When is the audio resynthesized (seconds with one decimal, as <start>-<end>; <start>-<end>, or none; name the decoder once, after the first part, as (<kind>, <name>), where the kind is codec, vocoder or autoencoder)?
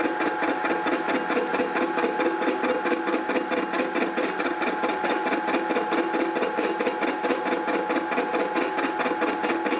none